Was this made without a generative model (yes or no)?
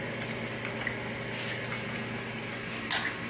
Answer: yes